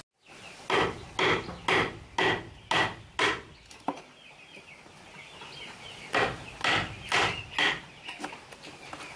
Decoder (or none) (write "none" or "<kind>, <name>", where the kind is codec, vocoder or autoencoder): none